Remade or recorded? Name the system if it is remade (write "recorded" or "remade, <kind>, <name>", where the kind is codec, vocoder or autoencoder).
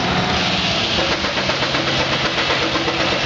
recorded